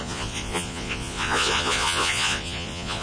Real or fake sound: fake